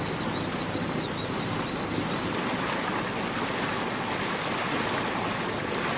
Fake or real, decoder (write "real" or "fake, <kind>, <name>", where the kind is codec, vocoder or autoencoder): real